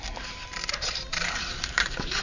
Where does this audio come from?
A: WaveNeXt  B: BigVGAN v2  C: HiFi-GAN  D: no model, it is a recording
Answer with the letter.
B